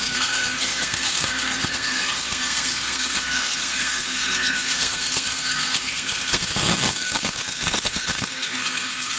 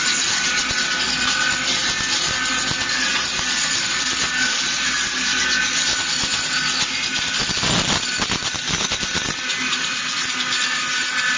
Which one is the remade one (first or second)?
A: first